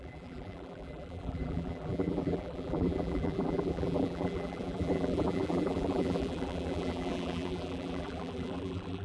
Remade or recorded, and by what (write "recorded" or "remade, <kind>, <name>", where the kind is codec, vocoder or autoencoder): remade, vocoder, BigVGAN v2